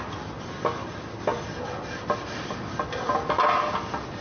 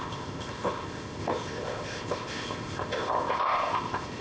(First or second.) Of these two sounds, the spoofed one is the second